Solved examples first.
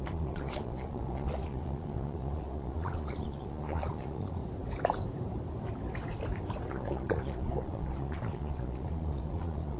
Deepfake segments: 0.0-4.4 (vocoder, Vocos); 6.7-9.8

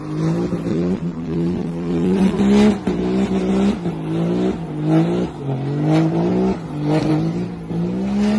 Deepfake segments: 0.7-2.4 (vocoder, Vocos)

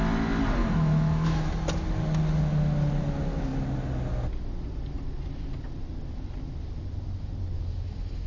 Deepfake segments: 0.6-1.5 (autoencoder, DAC-VAE)

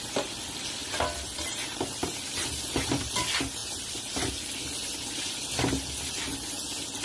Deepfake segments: 0.0-7.0 (vocoder, BigVGAN v2)

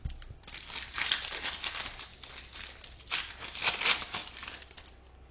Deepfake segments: none